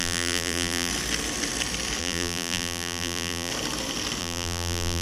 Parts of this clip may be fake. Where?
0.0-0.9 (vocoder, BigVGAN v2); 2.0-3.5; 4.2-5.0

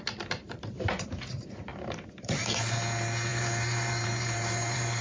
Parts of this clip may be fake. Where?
0.4-1.1 (vocoder, BigVGAN v2); 1.7-2.6; 3.3-5.0

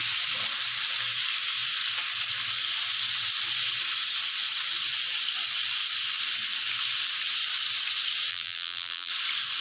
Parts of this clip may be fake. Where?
8.3-9.1 (vocoder, BigVGAN v2)

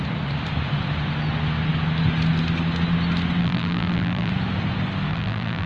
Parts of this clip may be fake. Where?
3.4-4.3 (vocoder, BigVGAN v2); 5.1-5.7

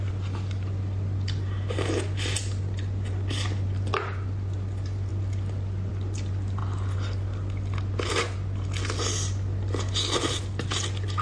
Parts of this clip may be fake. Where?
none

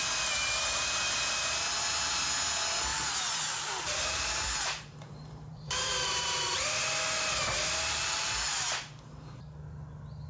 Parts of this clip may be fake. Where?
2.9-6.6 (vocoder, BigVGAN v2); 8.0-9.4

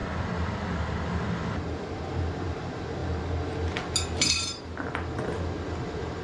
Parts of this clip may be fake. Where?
0.0-3.0 (vocoder, BigVGAN v2); 4.3-6.2

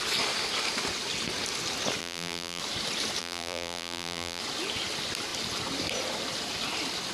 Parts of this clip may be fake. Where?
2.0-2.6 (vocoder, BigVGAN v2); 3.2-4.4